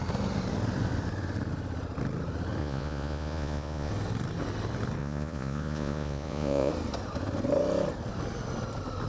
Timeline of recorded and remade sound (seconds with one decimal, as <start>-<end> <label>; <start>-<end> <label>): 0.0-2.6 recorded; 2.6-3.9 remade; 3.9-5.0 recorded; 5.0-6.7 remade; 6.7-9.1 recorded